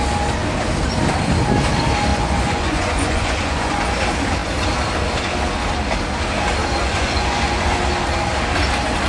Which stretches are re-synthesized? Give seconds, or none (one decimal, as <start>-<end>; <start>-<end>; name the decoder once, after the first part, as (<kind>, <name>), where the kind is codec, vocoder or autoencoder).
2.1-3.8 (vocoder, Vocos); 6.8-7.8

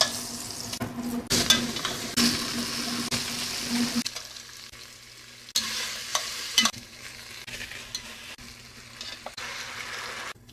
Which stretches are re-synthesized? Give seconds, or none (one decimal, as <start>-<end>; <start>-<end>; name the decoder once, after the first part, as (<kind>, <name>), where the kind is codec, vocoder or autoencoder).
6.1-6.9 (vocoder, BigVGAN v2)

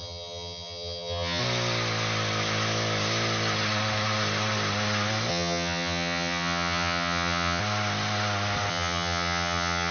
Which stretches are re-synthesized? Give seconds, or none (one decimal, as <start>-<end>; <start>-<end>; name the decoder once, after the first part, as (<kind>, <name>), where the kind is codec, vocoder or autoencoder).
0.0-1.4 (vocoder, HiFi-GAN); 5.3-7.6; 8.7-9.9